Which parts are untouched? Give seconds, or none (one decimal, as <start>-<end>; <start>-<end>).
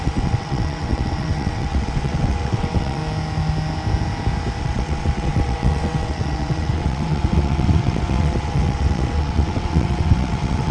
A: 3.0-4.6